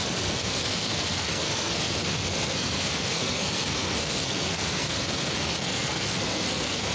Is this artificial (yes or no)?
yes